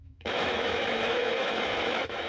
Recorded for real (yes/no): no